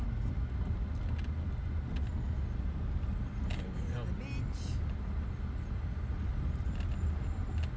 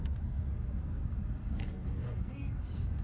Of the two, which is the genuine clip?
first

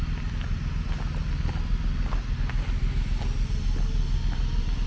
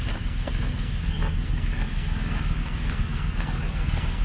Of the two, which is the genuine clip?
first